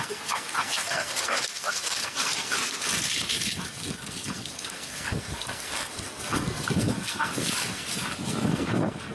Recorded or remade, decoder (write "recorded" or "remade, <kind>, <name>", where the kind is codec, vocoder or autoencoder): remade, codec, SNAC